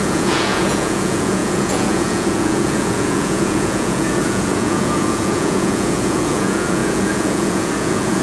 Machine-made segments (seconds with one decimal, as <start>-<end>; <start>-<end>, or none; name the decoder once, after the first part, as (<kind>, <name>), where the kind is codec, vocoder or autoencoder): 0.0-8.2 (vocoder, Vocos)